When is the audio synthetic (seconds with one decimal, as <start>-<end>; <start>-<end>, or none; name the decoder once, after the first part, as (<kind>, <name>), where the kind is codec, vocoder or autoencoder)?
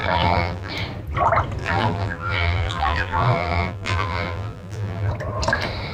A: 0.0-0.7 (vocoder, BigVGAN v2); 1.6-5.1